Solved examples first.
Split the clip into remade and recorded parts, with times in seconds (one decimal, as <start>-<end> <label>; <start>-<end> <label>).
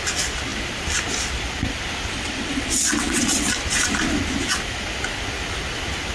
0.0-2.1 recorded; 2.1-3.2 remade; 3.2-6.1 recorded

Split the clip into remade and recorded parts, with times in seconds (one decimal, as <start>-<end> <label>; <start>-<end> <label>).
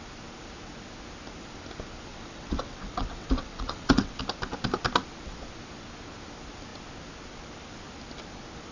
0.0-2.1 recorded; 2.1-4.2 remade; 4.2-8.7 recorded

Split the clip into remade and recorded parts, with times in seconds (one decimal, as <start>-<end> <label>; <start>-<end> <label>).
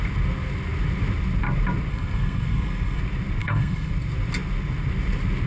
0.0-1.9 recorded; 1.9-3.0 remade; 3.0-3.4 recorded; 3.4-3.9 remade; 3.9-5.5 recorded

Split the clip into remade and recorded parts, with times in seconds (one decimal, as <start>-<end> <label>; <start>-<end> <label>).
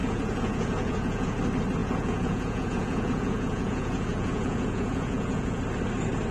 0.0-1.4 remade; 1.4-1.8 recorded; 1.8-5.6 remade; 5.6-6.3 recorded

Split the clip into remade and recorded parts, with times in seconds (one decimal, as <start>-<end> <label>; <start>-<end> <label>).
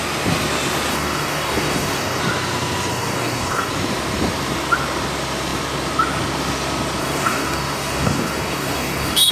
0.0-0.9 recorded; 0.9-2.2 remade; 2.2-2.9 recorded; 2.9-3.7 remade; 3.7-7.0 recorded; 7.0-9.3 remade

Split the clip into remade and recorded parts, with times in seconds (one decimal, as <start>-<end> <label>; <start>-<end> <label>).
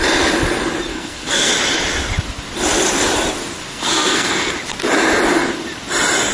0.0-0.9 recorded; 0.9-1.5 remade; 1.5-3.7 recorded; 3.7-4.5 remade; 4.5-6.3 recorded